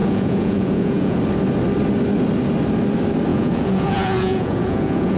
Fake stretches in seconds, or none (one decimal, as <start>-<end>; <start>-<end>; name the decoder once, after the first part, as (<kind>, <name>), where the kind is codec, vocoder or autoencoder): 0.0-1.2 (vocoder, Vocos); 3.3-5.2